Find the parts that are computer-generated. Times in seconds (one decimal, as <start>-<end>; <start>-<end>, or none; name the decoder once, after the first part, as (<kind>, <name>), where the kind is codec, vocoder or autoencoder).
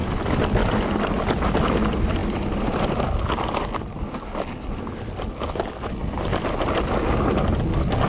0.0-1.6 (vocoder, BigVGAN v2); 2.2-2.9